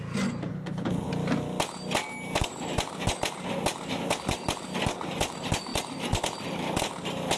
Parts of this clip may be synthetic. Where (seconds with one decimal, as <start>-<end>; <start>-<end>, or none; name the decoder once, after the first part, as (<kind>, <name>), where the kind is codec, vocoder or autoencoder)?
0.5-1.1 (codec, HILCodec)